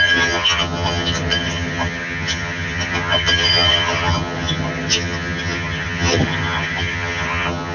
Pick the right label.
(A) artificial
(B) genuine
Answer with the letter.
A